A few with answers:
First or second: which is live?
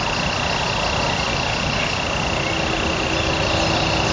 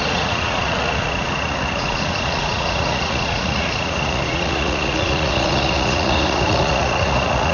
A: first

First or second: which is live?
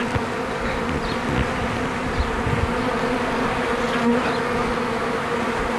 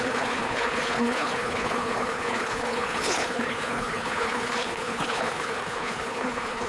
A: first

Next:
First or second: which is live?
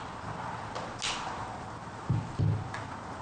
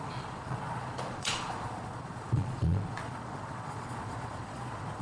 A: first